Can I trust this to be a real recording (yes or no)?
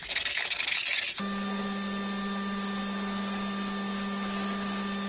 yes